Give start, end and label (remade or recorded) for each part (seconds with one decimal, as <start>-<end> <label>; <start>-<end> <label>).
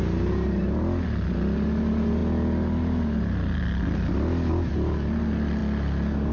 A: 0.0-6.3 recorded